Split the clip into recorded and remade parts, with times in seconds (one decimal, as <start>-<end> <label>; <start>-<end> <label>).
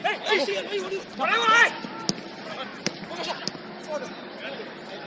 0.0-5.1 recorded